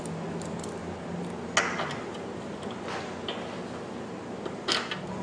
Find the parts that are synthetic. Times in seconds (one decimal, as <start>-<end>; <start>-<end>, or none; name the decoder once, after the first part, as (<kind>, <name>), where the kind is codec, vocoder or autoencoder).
none